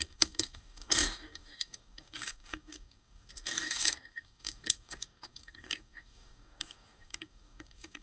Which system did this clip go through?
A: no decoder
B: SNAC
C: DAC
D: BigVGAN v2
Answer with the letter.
C